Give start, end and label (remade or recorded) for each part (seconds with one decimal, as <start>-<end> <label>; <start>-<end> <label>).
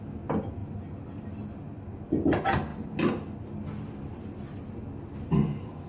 0.0-5.9 recorded